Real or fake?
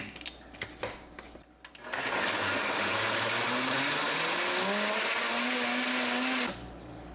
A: real